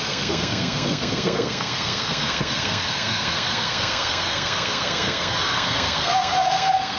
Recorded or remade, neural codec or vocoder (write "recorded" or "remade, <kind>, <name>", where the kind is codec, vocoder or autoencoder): remade, codec, SNAC